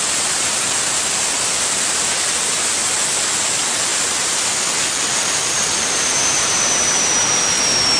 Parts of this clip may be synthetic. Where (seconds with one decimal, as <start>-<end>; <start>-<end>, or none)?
none